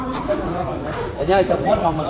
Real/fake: fake